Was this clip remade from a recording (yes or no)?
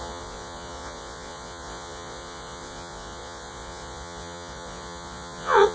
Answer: yes